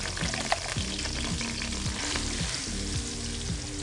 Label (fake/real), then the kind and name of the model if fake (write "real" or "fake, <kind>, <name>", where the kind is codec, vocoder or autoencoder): real